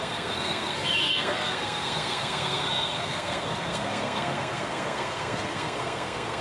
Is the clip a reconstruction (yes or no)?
yes